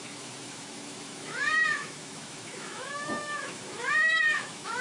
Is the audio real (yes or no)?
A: no